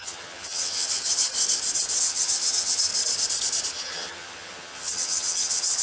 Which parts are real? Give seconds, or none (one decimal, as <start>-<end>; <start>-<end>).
1.3-2.0; 2.9-3.7